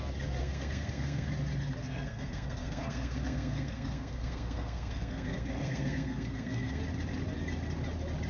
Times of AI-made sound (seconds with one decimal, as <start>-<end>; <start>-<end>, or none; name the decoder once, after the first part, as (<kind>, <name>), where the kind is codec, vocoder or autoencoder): 0.4-1.3 (codec, SNAC); 1.8-6.8